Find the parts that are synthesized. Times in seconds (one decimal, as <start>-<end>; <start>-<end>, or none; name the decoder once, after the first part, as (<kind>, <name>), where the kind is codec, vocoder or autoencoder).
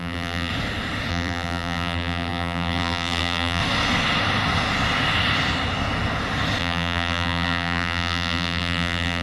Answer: 0.0-0.5 (vocoder, BigVGAN v2); 1.1-3.6; 6.6-9.2